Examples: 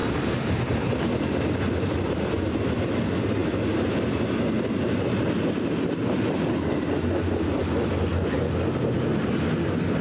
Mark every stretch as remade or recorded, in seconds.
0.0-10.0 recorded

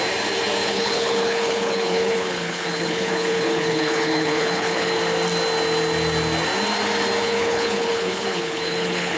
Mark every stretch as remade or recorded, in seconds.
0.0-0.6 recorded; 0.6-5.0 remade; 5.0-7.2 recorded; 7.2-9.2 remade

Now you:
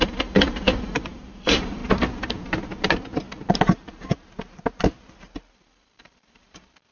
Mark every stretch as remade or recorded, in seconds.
0.0-1.8 remade; 1.8-5.5 recorded; 5.5-6.9 remade